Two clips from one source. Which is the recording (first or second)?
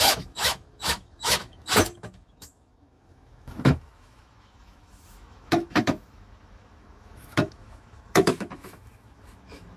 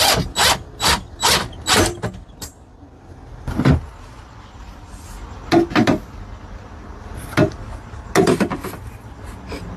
second